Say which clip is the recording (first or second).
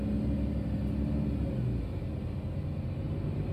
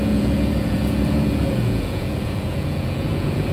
first